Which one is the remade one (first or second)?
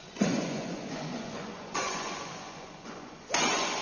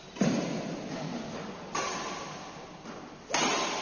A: first